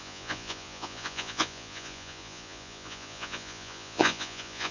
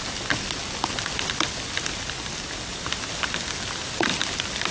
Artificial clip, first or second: first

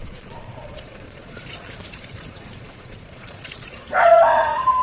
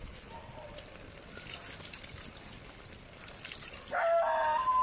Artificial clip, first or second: first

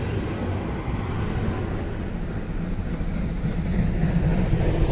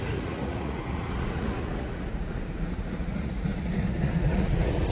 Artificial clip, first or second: second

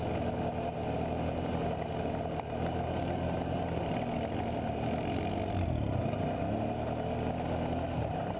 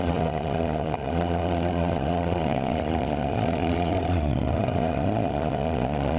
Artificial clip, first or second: second